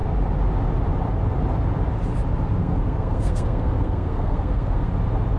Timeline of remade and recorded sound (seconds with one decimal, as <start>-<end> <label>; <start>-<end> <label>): 0.0-2.6 recorded; 2.6-4.9 remade; 4.9-5.4 recorded